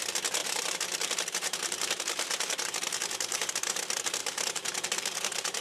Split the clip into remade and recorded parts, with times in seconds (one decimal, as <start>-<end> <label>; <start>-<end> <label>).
0.0-0.4 recorded; 0.4-3.8 remade; 3.8-4.2 recorded; 4.2-5.6 remade